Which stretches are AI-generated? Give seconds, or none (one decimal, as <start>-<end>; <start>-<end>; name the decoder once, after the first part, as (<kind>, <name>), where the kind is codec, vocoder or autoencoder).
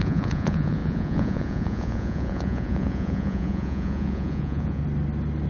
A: 0.0-4.8 (vocoder, Vocos)